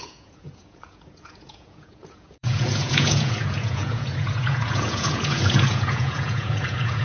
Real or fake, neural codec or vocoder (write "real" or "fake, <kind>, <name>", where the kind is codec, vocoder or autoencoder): fake, vocoder, Vocos